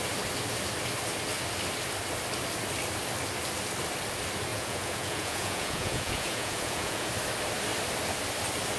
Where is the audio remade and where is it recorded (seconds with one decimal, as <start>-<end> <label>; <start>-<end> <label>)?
0.0-4.5 recorded; 4.5-7.1 remade; 7.1-8.8 recorded